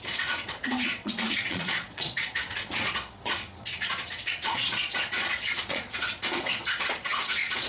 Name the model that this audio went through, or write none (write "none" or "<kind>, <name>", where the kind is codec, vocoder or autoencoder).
vocoder, Vocos